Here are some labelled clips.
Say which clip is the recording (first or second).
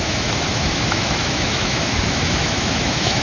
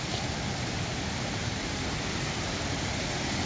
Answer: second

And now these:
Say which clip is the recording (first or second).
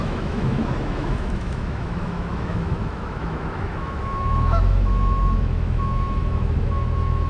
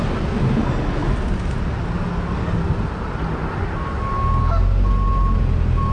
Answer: second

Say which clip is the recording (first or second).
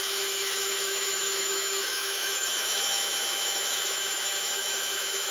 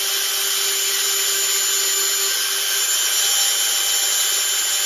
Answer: second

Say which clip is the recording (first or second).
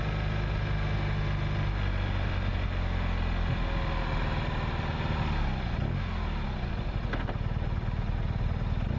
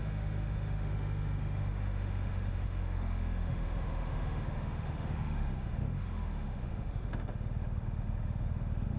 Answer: first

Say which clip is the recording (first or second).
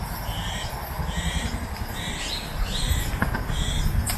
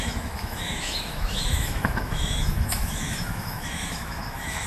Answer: first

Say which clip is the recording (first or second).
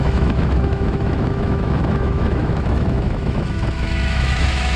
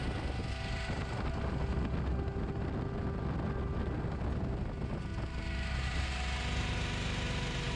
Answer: second